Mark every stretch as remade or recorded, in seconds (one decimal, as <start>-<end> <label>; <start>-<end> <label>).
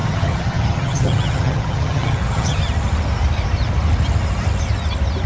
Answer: 0.0-2.6 remade; 2.6-5.3 recorded